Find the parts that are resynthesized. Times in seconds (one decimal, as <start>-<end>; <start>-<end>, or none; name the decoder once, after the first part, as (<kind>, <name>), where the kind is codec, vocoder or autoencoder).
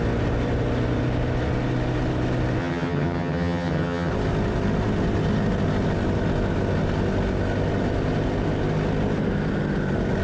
2.6-4.1 (vocoder, HiFi-GAN)